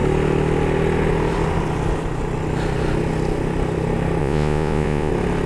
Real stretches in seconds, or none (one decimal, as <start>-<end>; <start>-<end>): 0.0-4.2; 5.1-5.5